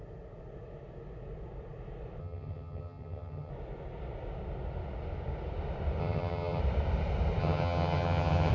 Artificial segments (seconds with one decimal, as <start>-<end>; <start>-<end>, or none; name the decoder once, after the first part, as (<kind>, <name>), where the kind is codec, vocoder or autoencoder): 2.2-3.5 (vocoder, HiFi-GAN); 6.0-6.6; 7.4-8.5

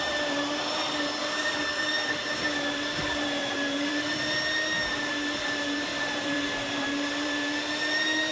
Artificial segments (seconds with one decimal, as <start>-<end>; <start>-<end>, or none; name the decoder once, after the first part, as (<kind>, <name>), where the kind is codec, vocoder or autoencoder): 0.0-8.3 (vocoder, BigVGAN v2)

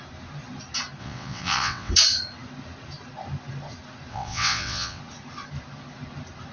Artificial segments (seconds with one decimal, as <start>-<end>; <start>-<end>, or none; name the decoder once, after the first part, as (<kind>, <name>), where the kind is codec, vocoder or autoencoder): 1.0-1.9 (vocoder, WaveNeXt); 4.1-5.0

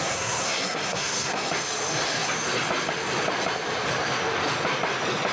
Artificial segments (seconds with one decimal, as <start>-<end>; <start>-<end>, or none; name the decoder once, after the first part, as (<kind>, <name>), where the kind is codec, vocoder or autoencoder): 0.0-1.5 (codec, SNAC)

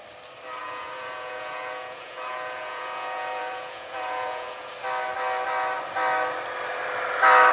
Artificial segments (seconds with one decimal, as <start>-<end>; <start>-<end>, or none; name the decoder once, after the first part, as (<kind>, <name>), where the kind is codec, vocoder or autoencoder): 0.6-4.7 (vocoder, Vocos)